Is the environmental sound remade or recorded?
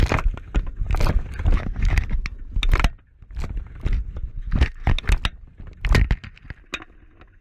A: recorded